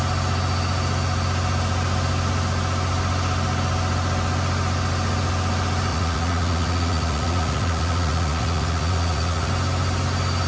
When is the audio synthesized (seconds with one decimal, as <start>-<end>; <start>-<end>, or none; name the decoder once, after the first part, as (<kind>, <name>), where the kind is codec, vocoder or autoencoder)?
5.9-9.5 (vocoder, Vocos)